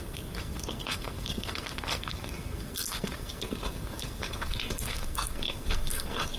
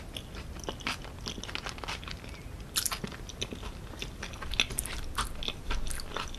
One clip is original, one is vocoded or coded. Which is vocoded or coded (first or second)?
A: first